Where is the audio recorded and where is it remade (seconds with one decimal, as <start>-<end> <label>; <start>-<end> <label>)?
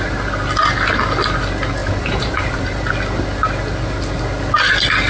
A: 0.0-1.8 recorded; 1.8-2.9 remade; 2.9-5.1 recorded